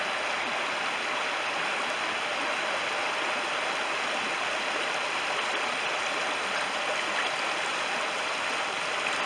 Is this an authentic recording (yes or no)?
yes